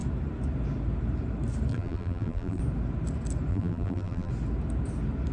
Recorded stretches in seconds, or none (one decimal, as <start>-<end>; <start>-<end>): 0.0-1.7; 2.6-3.5; 4.3-5.3

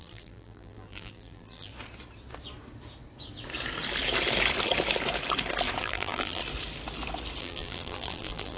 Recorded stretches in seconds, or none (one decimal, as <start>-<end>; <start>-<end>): 1.7-5.8; 6.4-7.4

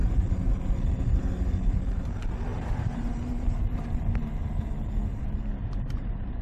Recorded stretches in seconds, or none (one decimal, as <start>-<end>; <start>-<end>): 0.0-2.5; 4.0-5.1

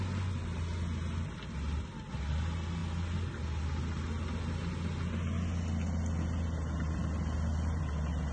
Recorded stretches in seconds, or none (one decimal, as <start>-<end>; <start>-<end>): 0.0-8.3

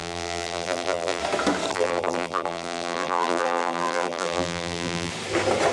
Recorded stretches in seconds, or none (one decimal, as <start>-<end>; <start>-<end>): 1.2-1.7; 5.1-5.7

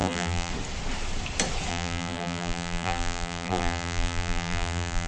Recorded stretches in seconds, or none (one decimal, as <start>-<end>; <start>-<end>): 0.5-1.7